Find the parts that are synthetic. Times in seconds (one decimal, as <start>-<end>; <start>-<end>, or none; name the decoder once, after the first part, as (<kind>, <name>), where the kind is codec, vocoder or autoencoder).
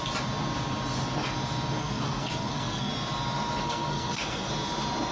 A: 1.8-2.9 (codec, SNAC); 3.6-4.5